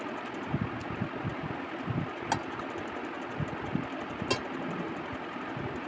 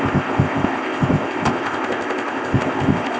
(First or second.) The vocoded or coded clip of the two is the second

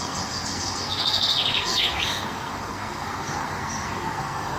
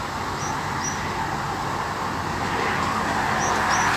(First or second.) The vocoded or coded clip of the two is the first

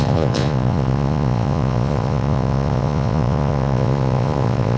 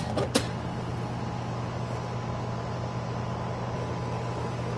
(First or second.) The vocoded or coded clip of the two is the first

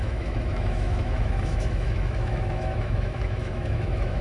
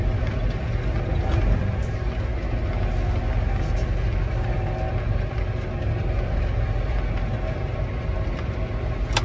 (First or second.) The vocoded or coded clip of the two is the first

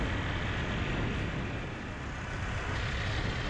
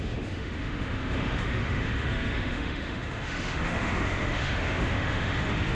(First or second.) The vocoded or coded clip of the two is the second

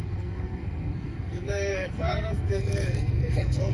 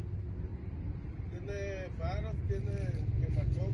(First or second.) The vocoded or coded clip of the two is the first